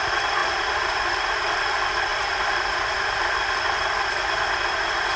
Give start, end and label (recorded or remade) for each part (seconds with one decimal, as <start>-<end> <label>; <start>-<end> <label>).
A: 0.0-0.4 recorded; 0.4-1.6 remade; 1.6-2.1 recorded; 2.1-4.0 remade; 4.0-5.2 recorded